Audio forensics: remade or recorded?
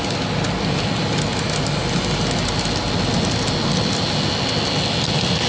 recorded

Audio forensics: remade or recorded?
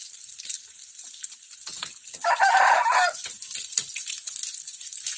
recorded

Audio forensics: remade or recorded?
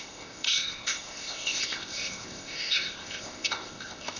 remade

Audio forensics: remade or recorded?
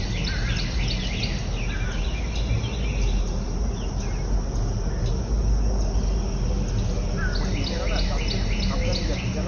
recorded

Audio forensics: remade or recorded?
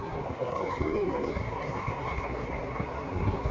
remade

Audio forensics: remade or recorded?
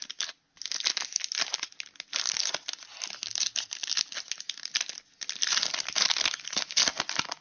recorded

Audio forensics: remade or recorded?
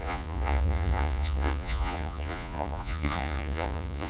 remade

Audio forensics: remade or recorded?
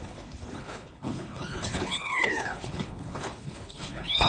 remade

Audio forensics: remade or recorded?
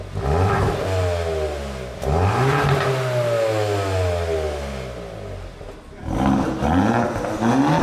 recorded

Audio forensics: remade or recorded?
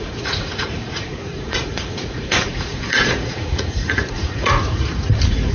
remade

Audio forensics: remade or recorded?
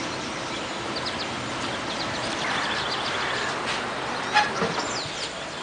recorded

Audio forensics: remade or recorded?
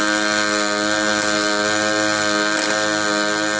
recorded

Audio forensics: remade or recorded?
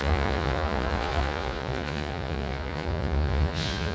remade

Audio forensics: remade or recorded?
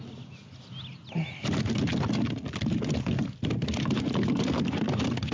recorded